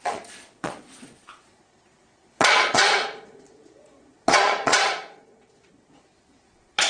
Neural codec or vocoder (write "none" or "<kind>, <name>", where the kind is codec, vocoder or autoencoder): vocoder, Vocos